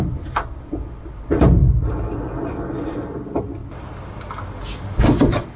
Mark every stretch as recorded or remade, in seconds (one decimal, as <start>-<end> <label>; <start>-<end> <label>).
0.0-5.6 recorded